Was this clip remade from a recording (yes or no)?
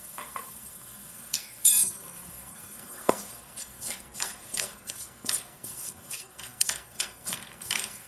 yes